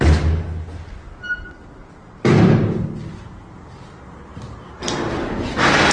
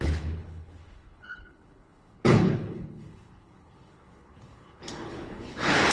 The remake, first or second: second